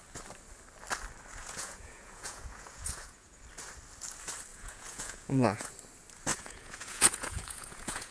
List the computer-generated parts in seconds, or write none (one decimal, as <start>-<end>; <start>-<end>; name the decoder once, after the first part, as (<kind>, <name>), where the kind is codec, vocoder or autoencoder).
1.4-3.4 (vocoder, Vocos); 4.5-5.7; 6.3-8.1